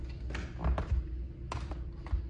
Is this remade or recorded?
recorded